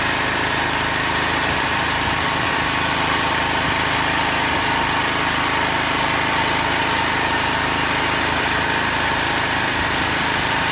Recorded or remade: recorded